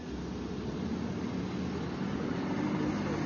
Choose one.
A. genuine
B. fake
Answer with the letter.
A